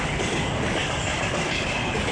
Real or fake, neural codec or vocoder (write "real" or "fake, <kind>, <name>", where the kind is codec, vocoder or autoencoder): fake, codec, DAC